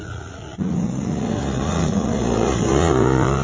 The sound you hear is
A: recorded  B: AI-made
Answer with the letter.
B